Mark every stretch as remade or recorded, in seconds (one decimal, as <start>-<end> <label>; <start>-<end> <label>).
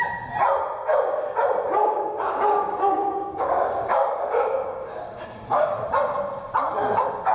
0.0-1.8 recorded; 1.8-5.7 remade; 5.7-7.3 recorded